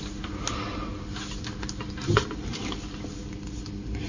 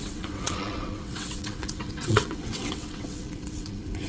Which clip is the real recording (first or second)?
first